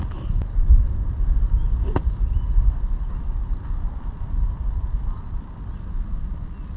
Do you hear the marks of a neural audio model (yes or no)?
no